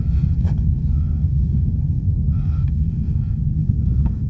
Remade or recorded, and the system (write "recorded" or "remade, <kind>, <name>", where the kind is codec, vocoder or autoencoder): remade, codec, SNAC